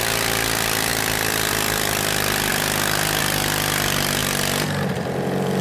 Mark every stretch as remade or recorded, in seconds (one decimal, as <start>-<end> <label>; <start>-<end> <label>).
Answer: 0.0-5.6 recorded